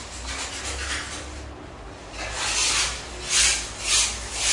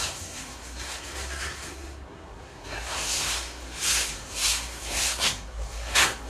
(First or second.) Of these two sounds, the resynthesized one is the second